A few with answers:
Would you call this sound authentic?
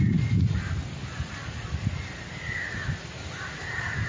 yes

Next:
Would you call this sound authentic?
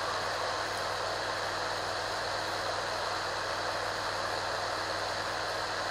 yes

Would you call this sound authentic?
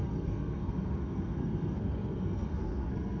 no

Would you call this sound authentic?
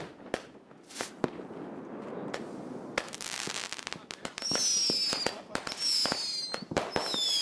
yes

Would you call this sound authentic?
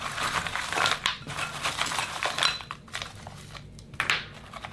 yes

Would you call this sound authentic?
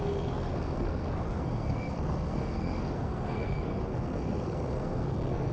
no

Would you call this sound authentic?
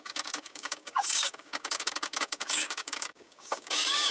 no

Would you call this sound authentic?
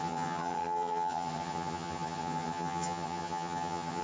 no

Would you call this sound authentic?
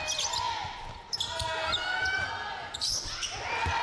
yes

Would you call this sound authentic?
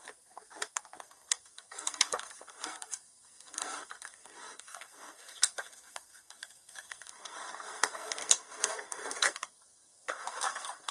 no